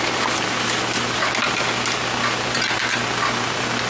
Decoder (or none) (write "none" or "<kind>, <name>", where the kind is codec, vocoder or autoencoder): none